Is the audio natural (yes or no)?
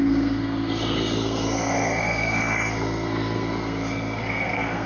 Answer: no